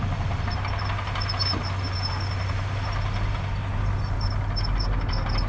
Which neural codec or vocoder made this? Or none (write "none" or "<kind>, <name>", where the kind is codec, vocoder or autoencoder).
none